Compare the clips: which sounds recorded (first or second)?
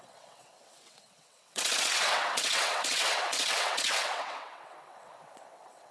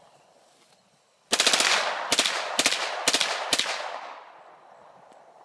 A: second